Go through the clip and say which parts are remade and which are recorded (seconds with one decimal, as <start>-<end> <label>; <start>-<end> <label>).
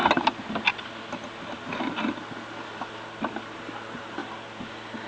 0.0-5.1 recorded